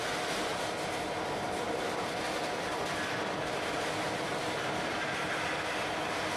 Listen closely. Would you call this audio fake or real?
real